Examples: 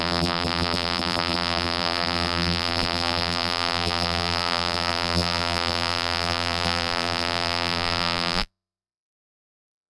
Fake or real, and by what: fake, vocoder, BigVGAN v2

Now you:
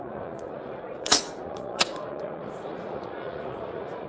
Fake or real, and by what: fake, vocoder, Vocos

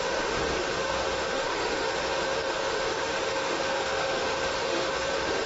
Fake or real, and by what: fake, autoencoder, DAC-VAE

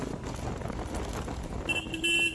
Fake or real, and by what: real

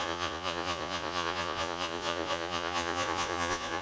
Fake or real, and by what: fake, vocoder, Vocos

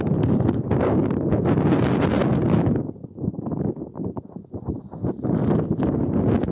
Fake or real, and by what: real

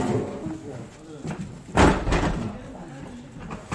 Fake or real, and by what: real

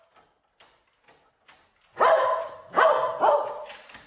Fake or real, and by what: real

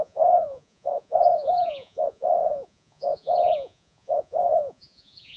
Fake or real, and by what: fake, vocoder, Vocos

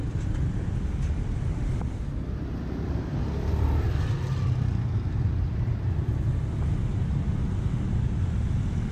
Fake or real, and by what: real